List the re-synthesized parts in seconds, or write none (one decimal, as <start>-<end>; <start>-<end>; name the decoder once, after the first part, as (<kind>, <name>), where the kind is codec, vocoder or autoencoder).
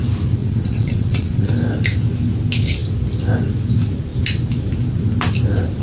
0.4-1.5 (vocoder, WaveNeXt)